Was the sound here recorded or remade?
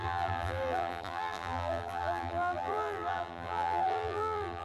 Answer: remade